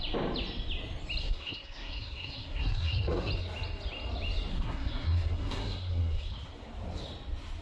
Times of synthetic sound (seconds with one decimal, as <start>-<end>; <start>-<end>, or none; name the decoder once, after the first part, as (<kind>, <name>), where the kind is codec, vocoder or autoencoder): 1.2-3.3 (codec, SNAC); 4.5-6.3